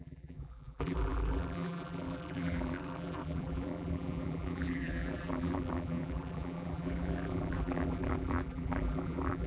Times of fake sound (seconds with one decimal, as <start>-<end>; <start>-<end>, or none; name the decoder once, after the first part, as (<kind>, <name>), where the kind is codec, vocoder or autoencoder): 0.0-9.5 (vocoder, BigVGAN v2)